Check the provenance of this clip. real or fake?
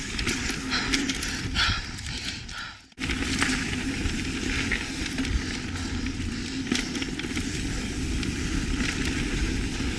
real